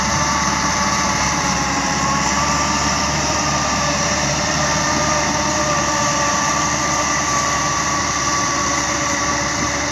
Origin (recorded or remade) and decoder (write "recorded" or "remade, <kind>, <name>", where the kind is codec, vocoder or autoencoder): remade, vocoder, BigVGAN v2